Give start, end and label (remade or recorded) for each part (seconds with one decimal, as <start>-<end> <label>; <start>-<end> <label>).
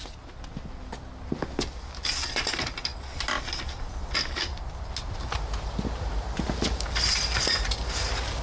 0.0-8.4 recorded